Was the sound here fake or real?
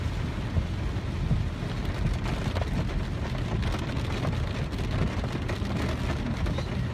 real